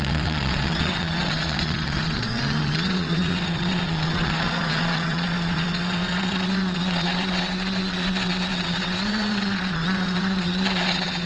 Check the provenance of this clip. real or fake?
fake